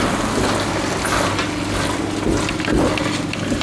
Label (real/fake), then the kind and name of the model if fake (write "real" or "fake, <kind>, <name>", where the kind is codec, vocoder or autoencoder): real